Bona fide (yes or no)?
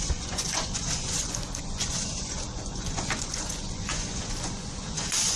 no